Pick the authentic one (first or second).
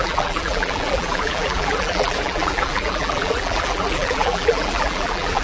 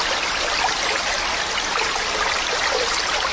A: second